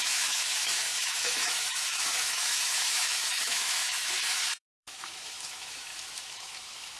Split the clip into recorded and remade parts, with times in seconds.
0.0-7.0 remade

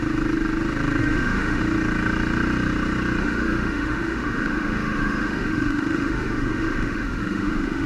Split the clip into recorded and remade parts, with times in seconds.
0.0-1.0 recorded; 1.0-1.6 remade; 1.6-3.2 recorded; 3.2-7.9 remade

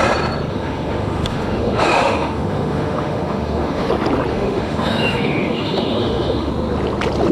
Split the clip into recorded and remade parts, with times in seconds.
0.0-0.5 recorded; 0.5-3.9 remade; 3.9-4.3 recorded; 4.3-6.5 remade; 6.5-7.3 recorded

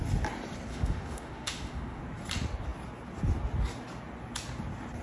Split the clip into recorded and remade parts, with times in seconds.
0.0-0.7 recorded; 0.7-2.0 remade; 2.0-5.0 recorded